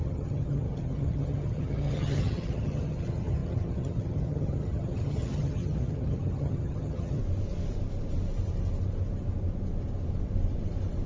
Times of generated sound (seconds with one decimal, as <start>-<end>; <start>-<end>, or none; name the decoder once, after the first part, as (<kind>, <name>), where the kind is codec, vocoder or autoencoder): 0.0-7.2 (vocoder, HiFi-GAN)